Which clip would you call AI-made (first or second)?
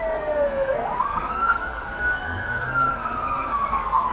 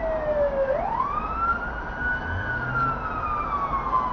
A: first